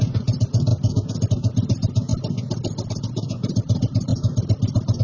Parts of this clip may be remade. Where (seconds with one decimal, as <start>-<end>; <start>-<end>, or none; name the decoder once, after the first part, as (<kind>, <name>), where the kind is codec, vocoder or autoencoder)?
0.0-0.7 (vocoder, BigVGAN v2); 1.3-2.1; 2.9-4.1